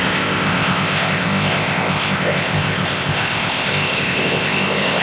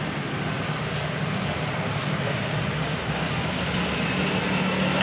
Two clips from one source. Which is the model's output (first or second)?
first